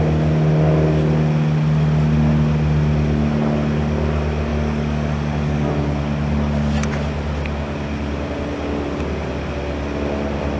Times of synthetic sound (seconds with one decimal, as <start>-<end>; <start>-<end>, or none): 4.5-5.7